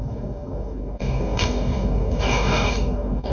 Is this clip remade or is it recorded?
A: remade